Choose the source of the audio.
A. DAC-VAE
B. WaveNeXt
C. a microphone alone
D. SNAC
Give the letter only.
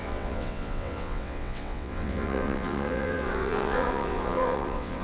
B